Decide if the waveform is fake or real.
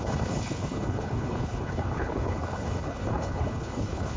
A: fake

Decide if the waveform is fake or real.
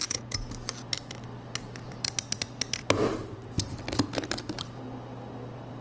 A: real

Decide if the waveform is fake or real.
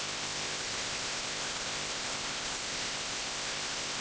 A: fake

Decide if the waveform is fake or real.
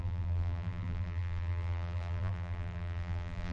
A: fake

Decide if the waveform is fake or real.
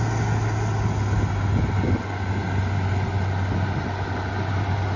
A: real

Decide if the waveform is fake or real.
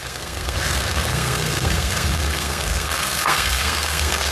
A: fake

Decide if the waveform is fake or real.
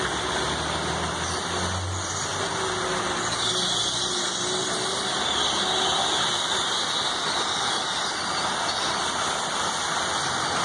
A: real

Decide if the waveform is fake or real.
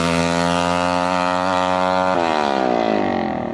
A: real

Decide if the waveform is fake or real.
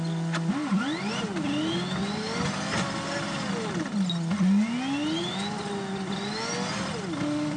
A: real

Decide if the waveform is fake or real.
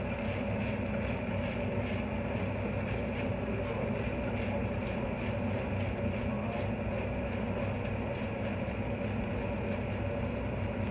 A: real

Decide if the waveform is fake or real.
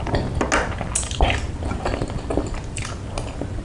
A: real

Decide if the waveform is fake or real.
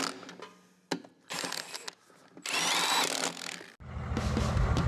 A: real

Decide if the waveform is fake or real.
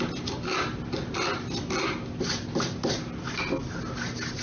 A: real